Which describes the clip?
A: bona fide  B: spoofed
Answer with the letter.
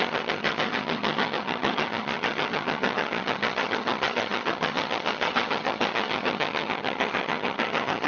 B